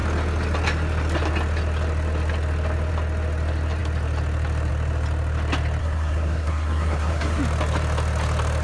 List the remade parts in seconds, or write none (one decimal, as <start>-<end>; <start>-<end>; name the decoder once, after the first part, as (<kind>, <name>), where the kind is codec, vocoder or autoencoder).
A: 5.8-7.4 (codec, SNAC)